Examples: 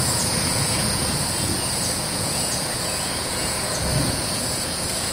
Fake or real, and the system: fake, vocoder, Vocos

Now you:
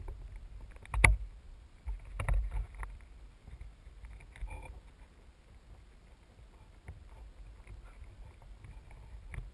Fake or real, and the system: real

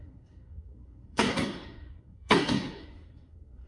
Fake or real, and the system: fake, codec, SNAC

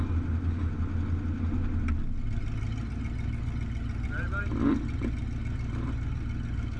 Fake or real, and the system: real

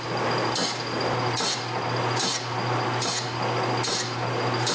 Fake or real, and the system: real